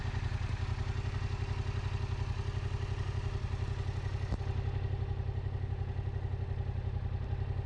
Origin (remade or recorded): recorded